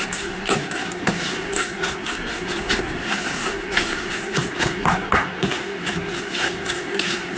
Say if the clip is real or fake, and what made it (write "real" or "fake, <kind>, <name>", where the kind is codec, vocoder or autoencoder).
fake, codec, SNAC